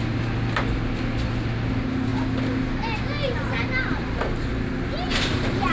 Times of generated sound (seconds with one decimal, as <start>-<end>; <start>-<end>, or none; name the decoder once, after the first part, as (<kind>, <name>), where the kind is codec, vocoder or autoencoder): none